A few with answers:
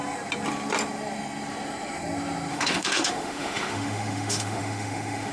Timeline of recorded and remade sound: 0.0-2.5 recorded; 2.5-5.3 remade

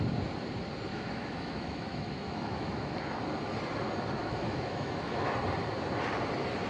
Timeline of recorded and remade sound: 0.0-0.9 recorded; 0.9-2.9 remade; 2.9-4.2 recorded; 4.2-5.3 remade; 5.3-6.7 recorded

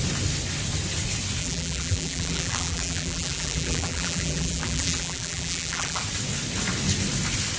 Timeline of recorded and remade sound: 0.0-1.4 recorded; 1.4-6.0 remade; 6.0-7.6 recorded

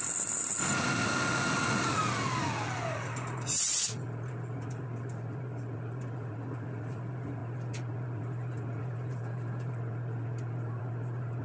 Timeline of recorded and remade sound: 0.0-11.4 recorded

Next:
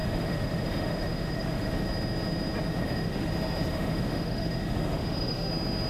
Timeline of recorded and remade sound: 0.0-1.7 remade; 1.7-2.8 recorded; 2.8-3.3 remade; 3.3-3.7 recorded; 3.7-5.5 remade; 5.5-5.9 recorded